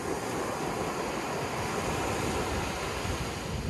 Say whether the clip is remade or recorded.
recorded